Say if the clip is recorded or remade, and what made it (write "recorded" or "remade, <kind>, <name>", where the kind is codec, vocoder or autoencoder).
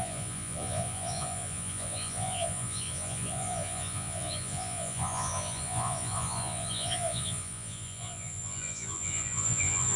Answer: remade, vocoder, Vocos